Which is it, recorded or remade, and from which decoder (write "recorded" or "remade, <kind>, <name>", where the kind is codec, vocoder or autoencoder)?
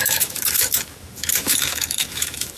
remade, autoencoder, DAC-VAE